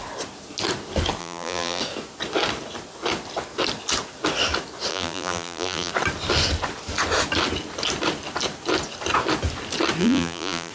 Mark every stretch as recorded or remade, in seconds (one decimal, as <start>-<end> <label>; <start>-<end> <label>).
0.0-1.2 recorded; 1.2-1.8 remade; 1.8-4.9 recorded; 4.9-5.9 remade; 5.9-10.0 recorded; 10.0-10.7 remade